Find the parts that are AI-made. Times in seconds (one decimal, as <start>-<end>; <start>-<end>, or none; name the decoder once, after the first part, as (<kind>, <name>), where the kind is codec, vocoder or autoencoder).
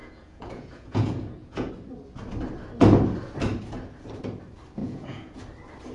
0.0-1.7 (vocoder, Vocos); 4.8-5.4